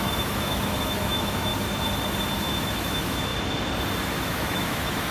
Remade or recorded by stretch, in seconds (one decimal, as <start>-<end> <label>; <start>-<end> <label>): 0.0-1.5 remade; 1.5-2.4 recorded; 2.4-3.3 remade; 3.3-4.0 recorded; 4.0-5.1 remade